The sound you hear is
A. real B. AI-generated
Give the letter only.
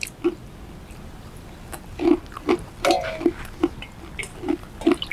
A